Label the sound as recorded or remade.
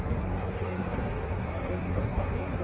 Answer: remade